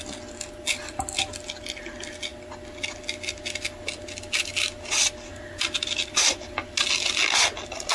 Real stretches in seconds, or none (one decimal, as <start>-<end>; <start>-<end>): 0.0-7.9

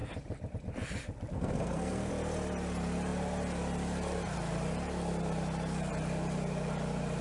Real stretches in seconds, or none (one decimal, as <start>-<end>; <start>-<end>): 0.0-1.3; 2.1-7.2

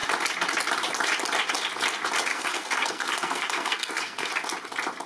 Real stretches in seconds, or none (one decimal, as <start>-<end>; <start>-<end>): 0.0-2.3; 4.3-5.1

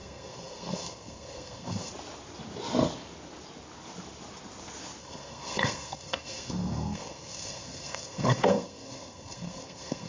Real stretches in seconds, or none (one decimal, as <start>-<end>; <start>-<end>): 1.9-5.0

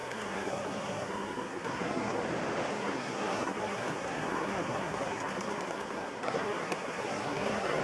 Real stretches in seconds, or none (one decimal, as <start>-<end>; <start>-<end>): 2.2-2.7

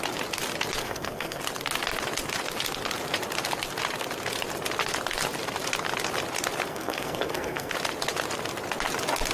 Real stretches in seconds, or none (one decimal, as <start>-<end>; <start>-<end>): 0.0-0.8; 1.4-6.7; 7.7-9.3

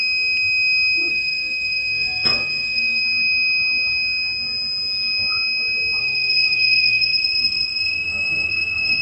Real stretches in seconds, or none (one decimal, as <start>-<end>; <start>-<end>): 0.0-1.1; 3.0-6.0

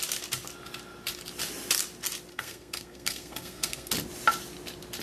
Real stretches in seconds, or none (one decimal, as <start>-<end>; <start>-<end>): 0.0-2.3; 3.9-5.0